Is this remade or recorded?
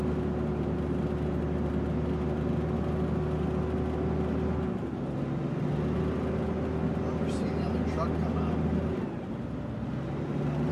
recorded